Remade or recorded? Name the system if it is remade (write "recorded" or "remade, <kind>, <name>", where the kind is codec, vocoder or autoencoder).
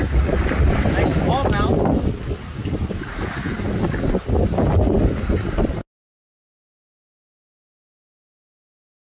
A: recorded